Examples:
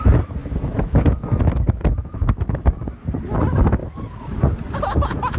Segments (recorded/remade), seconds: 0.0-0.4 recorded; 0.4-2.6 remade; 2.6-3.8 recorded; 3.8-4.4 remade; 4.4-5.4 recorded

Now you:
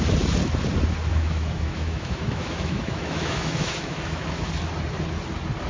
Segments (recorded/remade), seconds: 0.0-1.1 recorded; 1.1-4.5 remade; 4.5-5.7 recorded

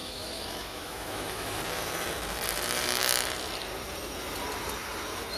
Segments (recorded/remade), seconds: 0.0-1.6 remade; 1.6-5.4 recorded

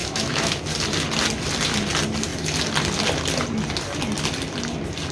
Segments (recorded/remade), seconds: 0.0-0.6 remade; 0.6-5.1 recorded

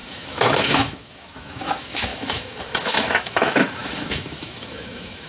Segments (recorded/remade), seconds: 0.0-5.3 remade

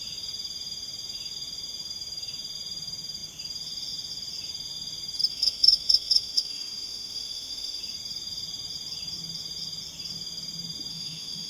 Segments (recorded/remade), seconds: 0.0-5.3 recorded; 5.3-7.8 remade; 7.8-10.9 recorded; 10.9-11.5 remade

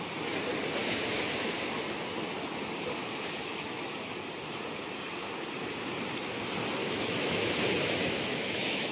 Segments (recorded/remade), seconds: 0.0-0.8 recorded; 0.8-1.5 remade; 1.5-3.0 recorded; 3.0-4.2 remade; 4.2-6.8 recorded; 6.8-8.9 remade